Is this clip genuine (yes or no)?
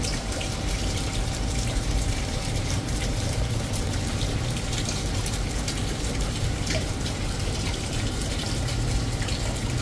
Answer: no